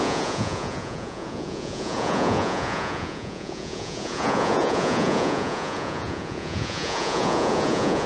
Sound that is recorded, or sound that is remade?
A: remade